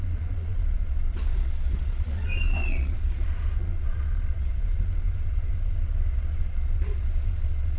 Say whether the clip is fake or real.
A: fake